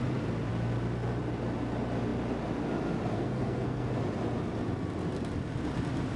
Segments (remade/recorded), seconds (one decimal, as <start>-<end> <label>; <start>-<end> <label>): 0.0-3.1 recorded; 3.1-3.9 remade; 3.9-6.2 recorded